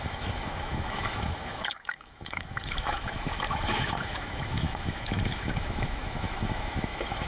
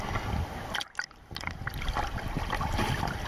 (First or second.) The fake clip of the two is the first